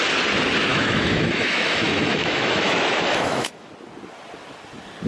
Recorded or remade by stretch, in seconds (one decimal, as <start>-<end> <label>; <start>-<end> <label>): 0.0-0.7 recorded; 0.7-3.7 remade; 3.7-5.1 recorded